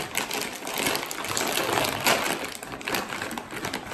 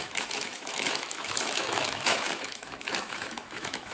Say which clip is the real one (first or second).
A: first